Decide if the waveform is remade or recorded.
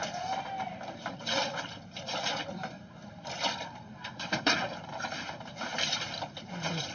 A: remade